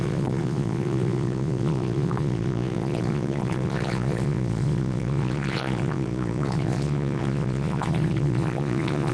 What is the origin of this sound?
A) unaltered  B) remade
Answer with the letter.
B